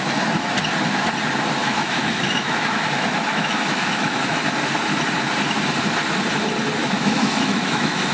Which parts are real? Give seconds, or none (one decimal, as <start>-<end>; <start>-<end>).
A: 0.0-1.6; 4.4-6.8